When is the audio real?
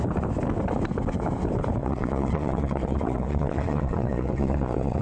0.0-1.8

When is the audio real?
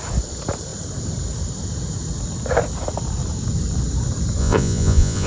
0.0-4.4